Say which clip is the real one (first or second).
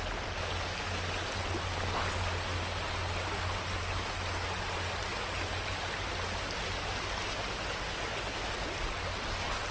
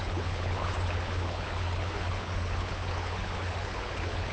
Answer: first